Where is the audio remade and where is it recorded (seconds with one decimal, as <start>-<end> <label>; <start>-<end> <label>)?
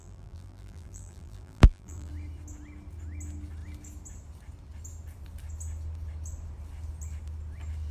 0.0-2.1 remade; 2.1-7.9 recorded